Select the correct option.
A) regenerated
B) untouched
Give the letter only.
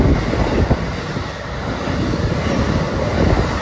B